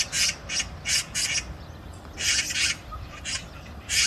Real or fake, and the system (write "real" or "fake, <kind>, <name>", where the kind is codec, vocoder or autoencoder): real